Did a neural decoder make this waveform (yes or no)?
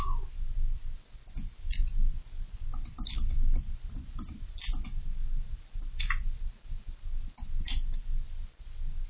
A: no